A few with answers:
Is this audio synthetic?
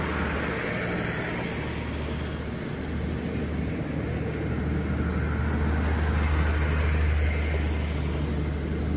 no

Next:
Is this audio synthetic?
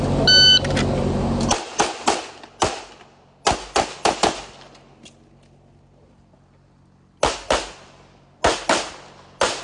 no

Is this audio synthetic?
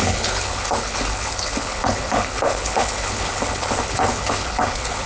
yes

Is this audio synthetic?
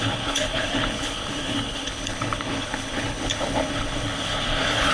yes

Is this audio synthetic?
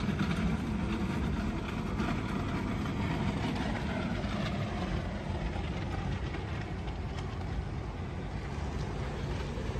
no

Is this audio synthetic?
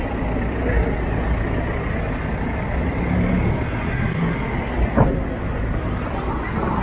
no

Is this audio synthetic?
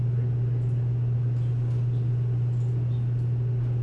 no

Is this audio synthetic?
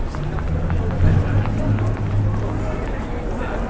no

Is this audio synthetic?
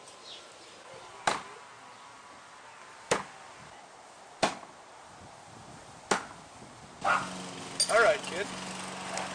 no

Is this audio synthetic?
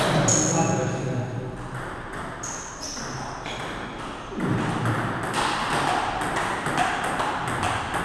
no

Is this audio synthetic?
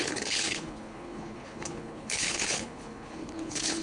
yes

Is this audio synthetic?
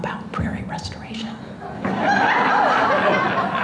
no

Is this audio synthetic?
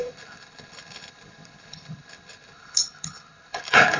yes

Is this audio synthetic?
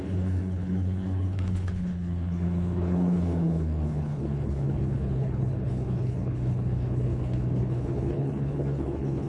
yes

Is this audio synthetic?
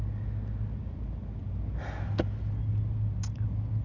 no